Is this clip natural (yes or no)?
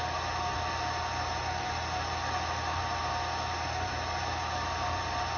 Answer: yes